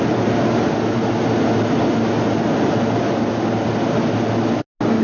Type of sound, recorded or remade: recorded